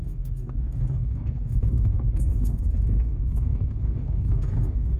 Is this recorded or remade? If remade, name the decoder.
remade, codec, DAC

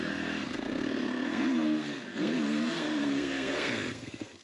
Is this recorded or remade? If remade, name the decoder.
remade, codec, SNAC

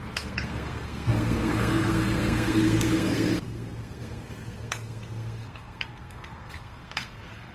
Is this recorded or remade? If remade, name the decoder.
remade, codec, SNAC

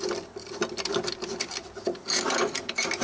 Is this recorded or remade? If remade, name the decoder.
recorded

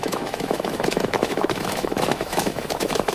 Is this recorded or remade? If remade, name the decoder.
remade, autoencoder, DAC-VAE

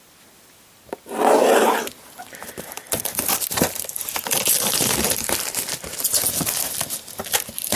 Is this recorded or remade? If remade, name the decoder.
remade, vocoder, BigVGAN v2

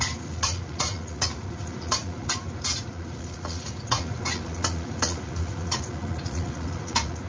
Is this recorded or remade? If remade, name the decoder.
remade, vocoder, Vocos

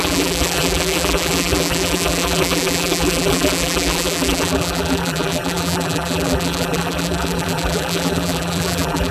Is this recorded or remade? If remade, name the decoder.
remade, vocoder, BigVGAN v2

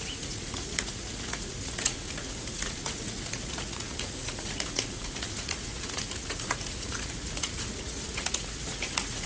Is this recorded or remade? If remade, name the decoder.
remade, vocoder, Vocos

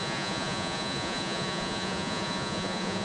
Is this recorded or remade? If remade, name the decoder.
remade, vocoder, Vocos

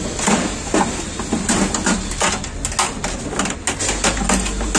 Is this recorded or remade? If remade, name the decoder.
recorded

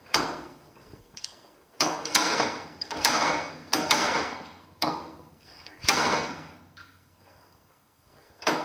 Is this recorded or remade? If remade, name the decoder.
remade, codec, SNAC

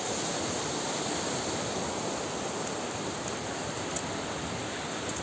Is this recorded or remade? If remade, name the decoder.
recorded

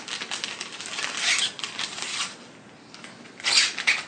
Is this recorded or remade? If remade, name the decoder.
recorded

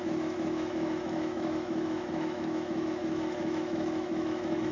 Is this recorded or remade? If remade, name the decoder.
remade, autoencoder, DAC-VAE